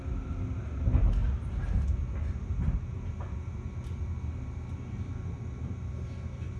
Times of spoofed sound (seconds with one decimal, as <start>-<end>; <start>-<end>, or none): none

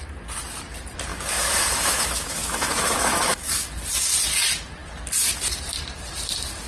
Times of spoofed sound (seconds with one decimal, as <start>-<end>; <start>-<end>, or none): 1.1-3.7

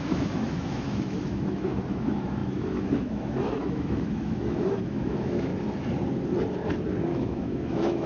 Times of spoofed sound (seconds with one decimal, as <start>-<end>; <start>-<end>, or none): 0.0-5.5; 7.1-8.1

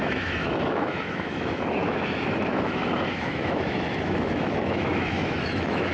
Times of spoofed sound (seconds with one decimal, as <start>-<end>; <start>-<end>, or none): 0.0-5.9

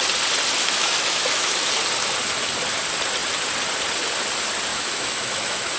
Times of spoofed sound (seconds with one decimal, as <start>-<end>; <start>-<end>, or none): 0.6-1.7; 4.7-5.8

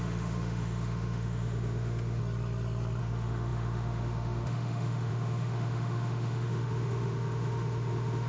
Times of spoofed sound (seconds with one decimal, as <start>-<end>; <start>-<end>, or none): 0.0-2.2; 3.0-8.3